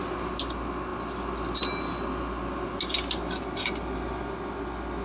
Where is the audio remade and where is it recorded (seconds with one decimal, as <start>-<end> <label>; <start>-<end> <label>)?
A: 0.0-5.0 recorded